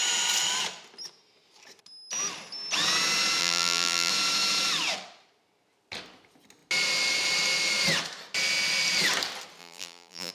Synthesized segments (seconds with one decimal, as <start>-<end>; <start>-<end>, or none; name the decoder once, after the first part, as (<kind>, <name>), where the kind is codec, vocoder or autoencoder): 3.4-4.1 (vocoder, BigVGAN v2); 9.6-10.3